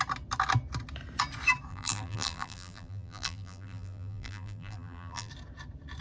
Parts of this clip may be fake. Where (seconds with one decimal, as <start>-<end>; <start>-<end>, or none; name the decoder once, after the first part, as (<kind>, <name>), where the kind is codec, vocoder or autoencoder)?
1.7-5.3 (vocoder, BigVGAN v2)